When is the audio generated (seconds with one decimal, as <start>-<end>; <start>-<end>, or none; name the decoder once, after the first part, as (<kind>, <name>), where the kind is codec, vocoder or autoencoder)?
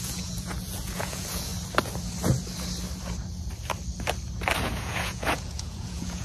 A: 0.0-1.5 (vocoder, Vocos); 4.6-6.2